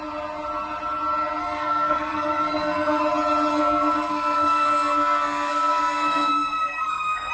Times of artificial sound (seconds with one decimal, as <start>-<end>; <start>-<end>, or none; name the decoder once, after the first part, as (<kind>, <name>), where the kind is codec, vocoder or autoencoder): 1.4-3.0 (codec, SNAC); 3.5-7.3